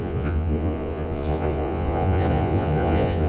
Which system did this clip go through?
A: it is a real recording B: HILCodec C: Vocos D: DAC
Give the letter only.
C